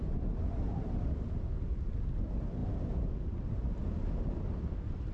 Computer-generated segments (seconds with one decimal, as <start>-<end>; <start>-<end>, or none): none